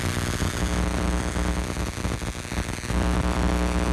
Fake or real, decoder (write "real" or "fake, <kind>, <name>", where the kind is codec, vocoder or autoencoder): real